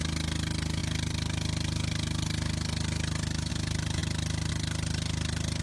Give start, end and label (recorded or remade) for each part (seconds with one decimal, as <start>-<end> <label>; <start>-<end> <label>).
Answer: 0.0-5.6 recorded